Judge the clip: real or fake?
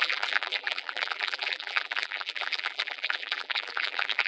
fake